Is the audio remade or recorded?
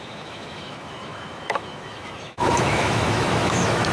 remade